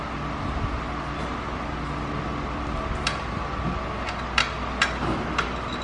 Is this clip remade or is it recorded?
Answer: recorded